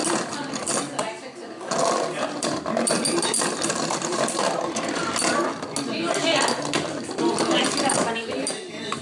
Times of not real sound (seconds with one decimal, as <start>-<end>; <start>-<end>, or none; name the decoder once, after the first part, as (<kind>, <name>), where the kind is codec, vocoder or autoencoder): 0.0-5.0 (vocoder, BigVGAN v2); 7.6-9.0